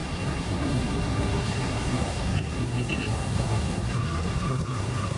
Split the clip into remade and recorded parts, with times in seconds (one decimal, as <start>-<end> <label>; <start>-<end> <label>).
0.0-5.2 remade